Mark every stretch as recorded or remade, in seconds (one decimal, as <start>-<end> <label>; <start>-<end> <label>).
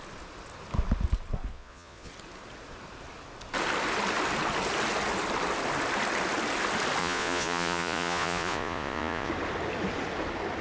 0.0-1.5 recorded; 1.5-2.1 remade; 2.1-7.0 recorded; 7.0-9.3 remade; 9.3-10.6 recorded